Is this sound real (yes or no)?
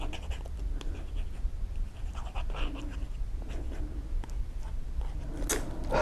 yes